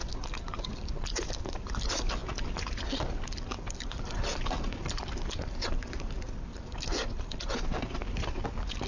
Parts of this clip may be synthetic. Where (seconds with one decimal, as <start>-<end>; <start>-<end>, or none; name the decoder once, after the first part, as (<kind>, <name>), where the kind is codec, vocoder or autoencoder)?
1.4-2.2 (vocoder, BigVGAN v2); 4.7-7.0; 7.6-8.9